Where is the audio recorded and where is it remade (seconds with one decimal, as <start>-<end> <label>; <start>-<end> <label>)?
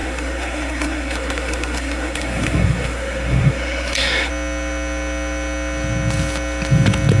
0.0-4.3 remade; 4.3-7.2 recorded